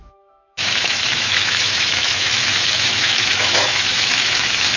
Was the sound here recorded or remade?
remade